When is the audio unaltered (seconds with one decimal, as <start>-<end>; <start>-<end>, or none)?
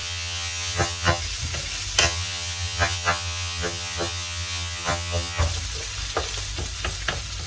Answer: 1.2-2.0; 5.4-7.5